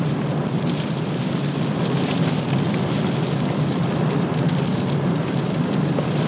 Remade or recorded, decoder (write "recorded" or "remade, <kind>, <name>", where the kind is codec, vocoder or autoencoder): recorded